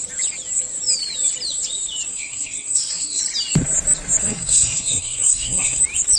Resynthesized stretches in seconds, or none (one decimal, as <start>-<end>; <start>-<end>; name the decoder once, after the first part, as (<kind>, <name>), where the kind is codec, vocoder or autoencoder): 2.1-3.2 (codec, SNAC); 4.2-5.8